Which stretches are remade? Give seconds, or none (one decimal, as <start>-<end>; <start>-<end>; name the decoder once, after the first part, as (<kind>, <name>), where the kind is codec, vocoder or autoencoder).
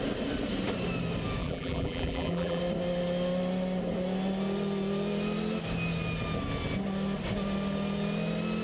1.4-2.6 (vocoder, BigVGAN v2)